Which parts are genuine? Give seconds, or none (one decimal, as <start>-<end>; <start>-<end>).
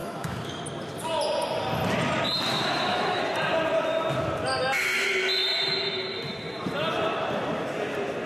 0.6-2.5; 3.2-8.3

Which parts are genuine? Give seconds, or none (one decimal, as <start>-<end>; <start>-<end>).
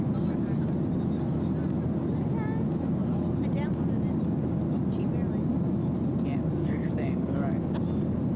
0.0-6.6; 7.4-8.4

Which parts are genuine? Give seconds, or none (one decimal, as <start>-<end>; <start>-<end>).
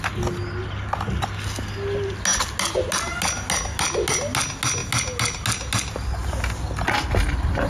0.0-7.7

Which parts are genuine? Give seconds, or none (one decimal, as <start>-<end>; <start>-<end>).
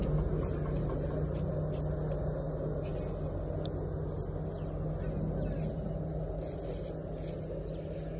0.0-8.2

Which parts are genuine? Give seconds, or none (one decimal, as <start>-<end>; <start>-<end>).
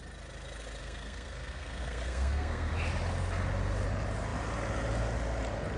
0.0-0.8; 2.7-5.8